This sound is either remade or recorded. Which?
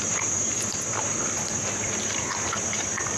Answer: recorded